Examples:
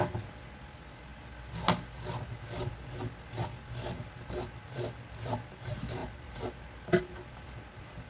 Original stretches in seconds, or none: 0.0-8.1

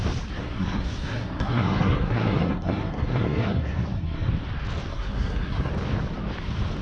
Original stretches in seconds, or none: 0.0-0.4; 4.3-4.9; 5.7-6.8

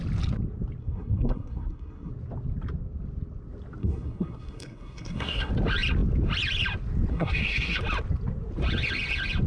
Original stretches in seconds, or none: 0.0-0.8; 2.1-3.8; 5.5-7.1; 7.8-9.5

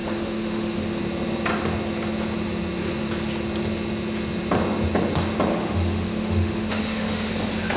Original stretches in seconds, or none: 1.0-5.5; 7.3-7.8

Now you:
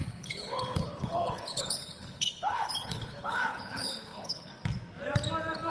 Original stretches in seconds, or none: 4.5-5.7

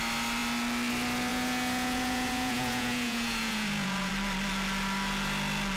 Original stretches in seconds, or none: 0.0-1.3; 4.1-5.8